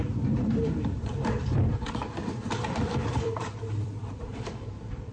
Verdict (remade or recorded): remade